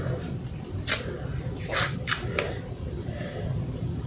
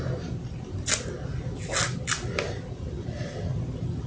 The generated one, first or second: first